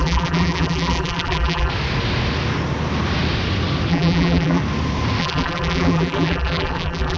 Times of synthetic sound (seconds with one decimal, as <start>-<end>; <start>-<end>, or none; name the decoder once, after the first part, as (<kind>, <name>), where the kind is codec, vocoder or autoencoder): 0.0-1.7 (vocoder, BigVGAN v2); 3.9-4.6; 5.2-7.2